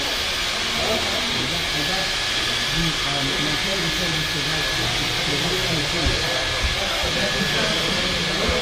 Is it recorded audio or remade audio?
recorded